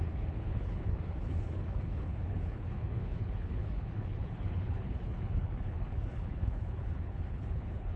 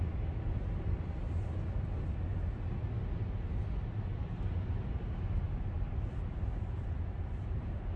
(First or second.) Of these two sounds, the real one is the second